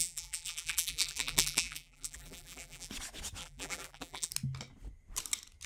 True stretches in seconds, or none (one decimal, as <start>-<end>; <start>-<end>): 2.9-3.4; 4.3-5.7